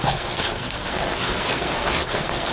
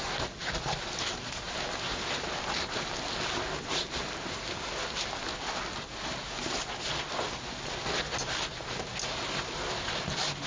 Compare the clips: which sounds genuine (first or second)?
second